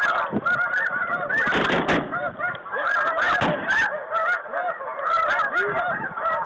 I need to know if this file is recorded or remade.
recorded